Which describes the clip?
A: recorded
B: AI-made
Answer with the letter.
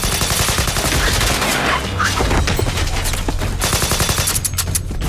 A